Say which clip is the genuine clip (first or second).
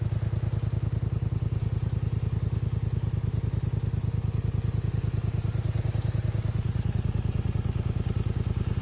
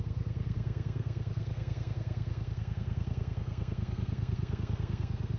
first